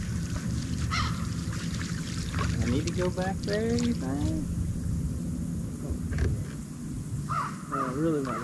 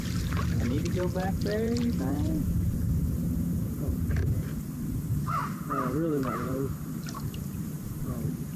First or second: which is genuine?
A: first